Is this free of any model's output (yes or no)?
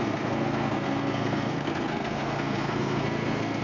no